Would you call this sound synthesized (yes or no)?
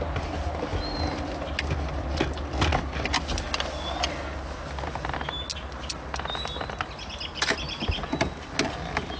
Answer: no